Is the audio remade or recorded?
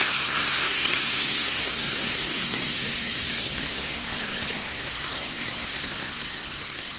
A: remade